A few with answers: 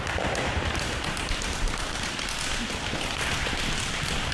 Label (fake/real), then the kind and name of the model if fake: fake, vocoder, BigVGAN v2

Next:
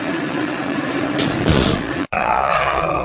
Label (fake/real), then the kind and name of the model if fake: fake, vocoder, Vocos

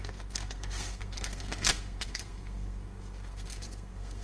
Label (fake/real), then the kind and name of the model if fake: fake, codec, SNAC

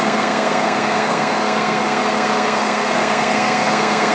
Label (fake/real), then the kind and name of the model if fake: fake, codec, SNAC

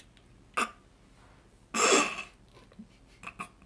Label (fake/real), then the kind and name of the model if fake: real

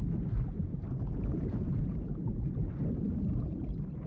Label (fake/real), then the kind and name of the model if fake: real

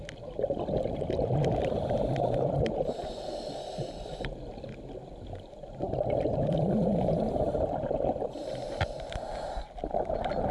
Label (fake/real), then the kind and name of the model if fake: real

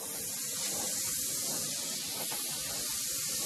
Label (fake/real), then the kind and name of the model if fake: real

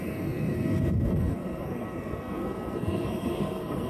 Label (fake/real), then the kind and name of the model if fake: fake, codec, SNAC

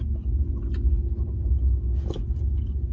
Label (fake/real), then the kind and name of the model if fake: real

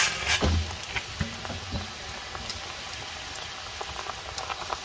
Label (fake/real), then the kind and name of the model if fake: real